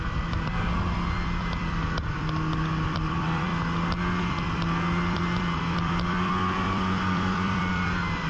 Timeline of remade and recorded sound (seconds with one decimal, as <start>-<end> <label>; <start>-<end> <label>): 0.0-3.5 remade; 3.5-4.2 recorded; 4.2-8.3 remade